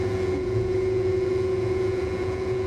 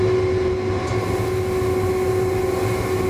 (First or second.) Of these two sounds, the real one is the second